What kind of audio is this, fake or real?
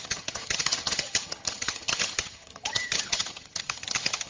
fake